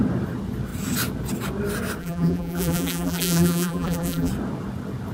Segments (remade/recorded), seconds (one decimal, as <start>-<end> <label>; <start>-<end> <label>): 0.0-2.0 recorded; 2.0-4.3 remade; 4.3-5.1 recorded